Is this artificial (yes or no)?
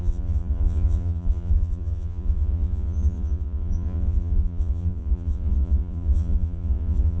yes